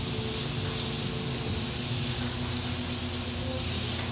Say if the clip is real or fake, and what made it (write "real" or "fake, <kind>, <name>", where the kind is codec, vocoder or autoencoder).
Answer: real